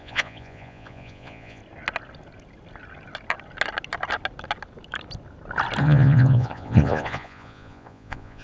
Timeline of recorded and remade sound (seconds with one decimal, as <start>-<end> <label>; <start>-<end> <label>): 0.0-1.6 remade; 1.6-5.8 recorded; 5.8-8.4 remade